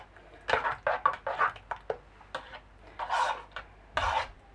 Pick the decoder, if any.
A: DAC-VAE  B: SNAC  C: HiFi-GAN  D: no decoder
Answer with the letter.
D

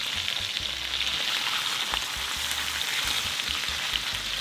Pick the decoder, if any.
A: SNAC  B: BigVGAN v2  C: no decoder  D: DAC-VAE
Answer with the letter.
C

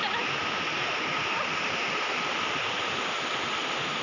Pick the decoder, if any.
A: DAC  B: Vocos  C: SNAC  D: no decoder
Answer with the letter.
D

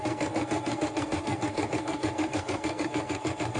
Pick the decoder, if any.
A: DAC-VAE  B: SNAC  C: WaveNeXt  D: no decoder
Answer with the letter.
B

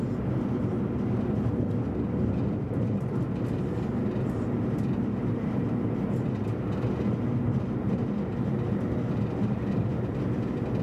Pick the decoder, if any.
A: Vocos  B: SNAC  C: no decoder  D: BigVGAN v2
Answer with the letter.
C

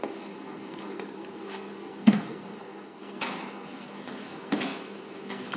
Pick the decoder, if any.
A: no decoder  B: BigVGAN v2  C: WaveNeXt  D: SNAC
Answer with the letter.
D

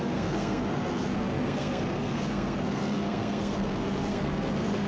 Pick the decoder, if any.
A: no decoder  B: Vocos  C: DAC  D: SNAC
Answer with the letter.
D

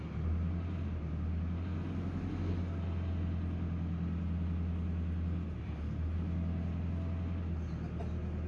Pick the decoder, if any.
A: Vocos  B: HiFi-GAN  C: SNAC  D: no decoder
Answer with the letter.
D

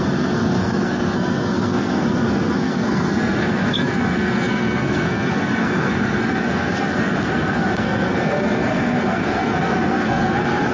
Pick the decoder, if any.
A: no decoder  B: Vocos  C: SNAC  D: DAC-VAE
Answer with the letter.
C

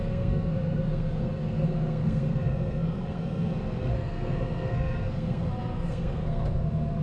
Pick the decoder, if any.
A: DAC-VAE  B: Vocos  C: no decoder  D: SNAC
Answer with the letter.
D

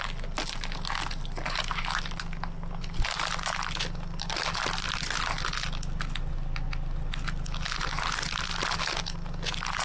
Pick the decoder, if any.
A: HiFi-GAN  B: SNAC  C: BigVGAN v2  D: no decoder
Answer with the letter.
D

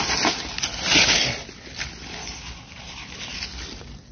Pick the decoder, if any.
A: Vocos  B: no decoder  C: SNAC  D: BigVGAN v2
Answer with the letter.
B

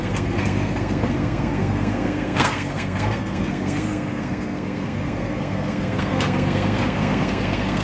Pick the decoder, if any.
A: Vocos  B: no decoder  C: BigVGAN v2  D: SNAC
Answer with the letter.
D